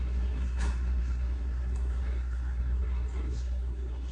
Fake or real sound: fake